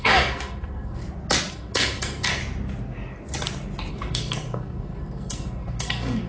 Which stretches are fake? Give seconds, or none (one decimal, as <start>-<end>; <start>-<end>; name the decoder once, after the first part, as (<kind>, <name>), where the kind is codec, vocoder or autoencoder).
0.0-1.0 (codec, SNAC); 1.5-2.4; 3.9-6.3